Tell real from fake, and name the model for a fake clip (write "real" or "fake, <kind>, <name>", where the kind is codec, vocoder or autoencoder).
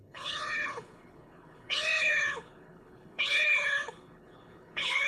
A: fake, codec, HILCodec